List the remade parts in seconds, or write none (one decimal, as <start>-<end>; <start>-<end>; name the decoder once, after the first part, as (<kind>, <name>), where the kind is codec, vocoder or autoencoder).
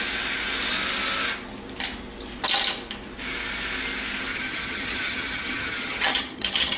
4.3-6.8 (vocoder, HiFi-GAN)